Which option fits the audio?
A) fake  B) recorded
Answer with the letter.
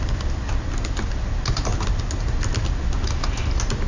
B